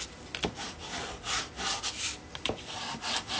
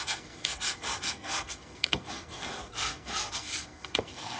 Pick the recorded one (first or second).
first